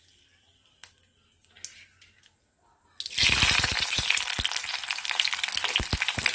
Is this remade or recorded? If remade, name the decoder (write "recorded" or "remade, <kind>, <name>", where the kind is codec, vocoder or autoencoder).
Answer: recorded